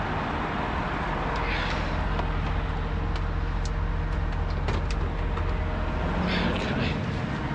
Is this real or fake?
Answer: real